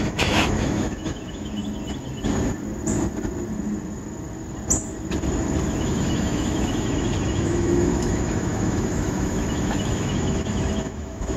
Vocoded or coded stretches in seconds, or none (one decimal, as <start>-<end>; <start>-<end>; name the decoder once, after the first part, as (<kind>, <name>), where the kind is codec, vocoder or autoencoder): 0.0-1.6 (autoencoder, DAC-VAE); 5.8-11.4